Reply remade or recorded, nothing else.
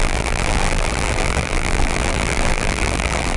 remade